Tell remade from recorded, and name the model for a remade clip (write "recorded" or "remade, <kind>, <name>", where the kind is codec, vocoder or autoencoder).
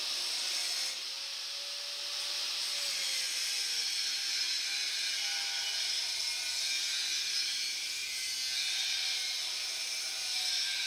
recorded